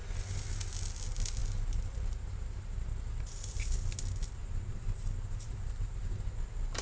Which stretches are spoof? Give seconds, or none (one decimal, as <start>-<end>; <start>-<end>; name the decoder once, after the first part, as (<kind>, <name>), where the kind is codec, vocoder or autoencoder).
4.4-6.3 (vocoder, BigVGAN v2)